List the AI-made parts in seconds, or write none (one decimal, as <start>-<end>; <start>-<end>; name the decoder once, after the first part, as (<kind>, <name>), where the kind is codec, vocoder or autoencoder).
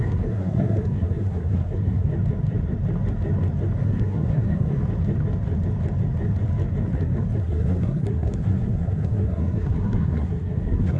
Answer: 0.0-2.1 (codec, SNAC); 3.8-4.8; 7.4-11.0